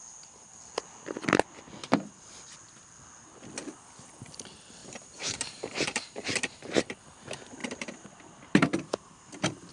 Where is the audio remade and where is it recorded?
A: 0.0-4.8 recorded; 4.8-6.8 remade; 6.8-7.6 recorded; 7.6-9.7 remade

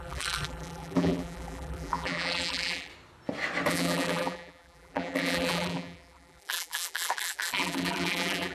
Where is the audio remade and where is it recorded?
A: 0.0-2.9 remade; 2.9-3.7 recorded; 3.7-8.5 remade

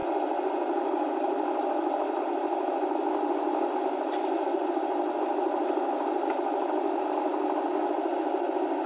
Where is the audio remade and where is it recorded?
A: 0.0-8.9 recorded

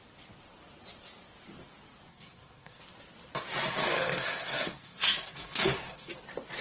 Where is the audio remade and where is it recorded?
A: 0.0-2.1 recorded; 2.1-2.8 remade; 2.8-3.8 recorded; 3.8-6.1 remade; 6.1-6.6 recorded

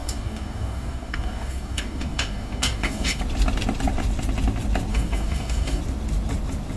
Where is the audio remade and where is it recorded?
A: 0.0-3.2 remade; 3.2-4.9 recorded; 4.9-5.8 remade; 5.8-6.8 recorded

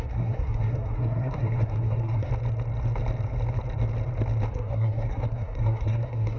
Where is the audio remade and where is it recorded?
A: 0.0-2.3 remade; 2.3-4.5 recorded; 4.5-6.4 remade

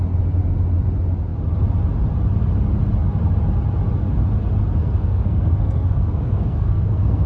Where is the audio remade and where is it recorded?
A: 0.0-4.8 recorded; 4.8-7.3 remade